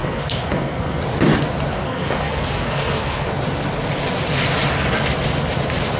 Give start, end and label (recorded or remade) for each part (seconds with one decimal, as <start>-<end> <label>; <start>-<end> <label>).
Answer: 0.0-1.0 remade; 1.0-1.7 recorded; 1.7-3.3 remade; 3.3-6.0 recorded